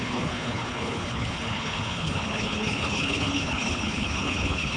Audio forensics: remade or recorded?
remade